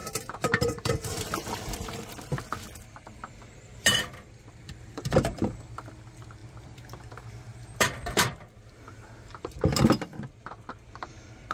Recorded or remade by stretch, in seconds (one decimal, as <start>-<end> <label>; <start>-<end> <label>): 0.0-11.5 remade